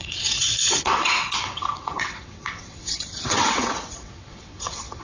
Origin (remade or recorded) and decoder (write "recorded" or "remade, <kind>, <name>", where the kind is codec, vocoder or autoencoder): remade, vocoder, WaveNeXt